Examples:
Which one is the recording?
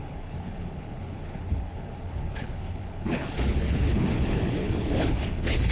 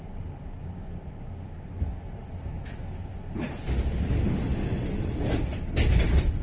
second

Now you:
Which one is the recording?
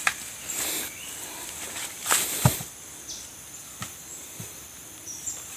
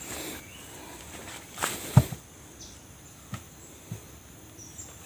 second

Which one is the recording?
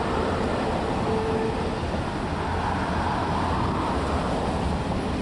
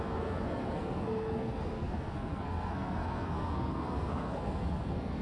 first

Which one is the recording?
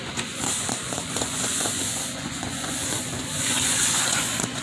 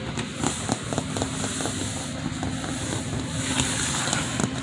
second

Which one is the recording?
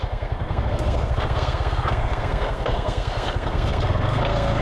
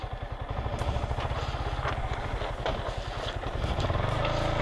second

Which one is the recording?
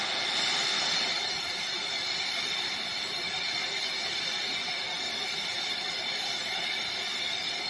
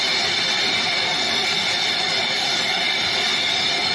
second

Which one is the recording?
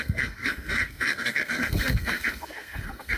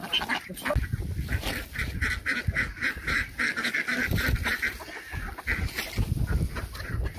second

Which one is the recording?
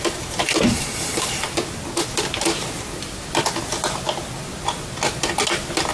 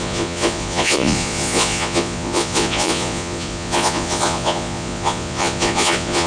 first